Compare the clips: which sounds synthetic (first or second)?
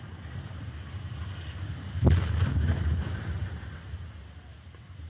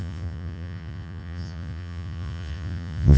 second